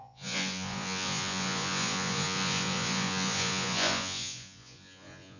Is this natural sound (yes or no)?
no